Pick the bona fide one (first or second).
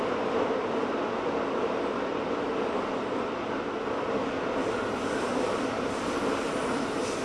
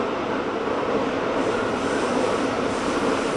first